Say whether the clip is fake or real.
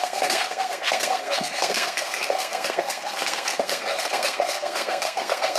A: fake